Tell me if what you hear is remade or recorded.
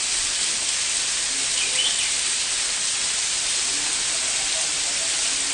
recorded